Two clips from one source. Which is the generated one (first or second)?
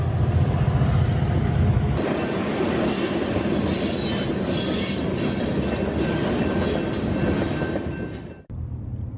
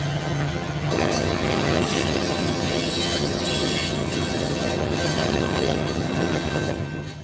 second